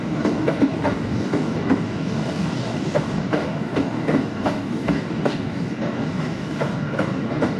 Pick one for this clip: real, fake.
fake